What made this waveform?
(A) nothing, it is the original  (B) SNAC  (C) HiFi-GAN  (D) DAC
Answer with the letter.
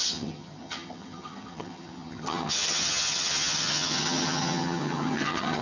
C